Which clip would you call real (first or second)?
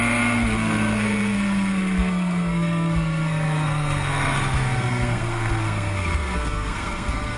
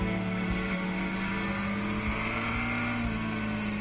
second